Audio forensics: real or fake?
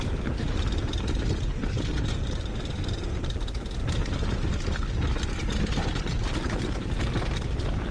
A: real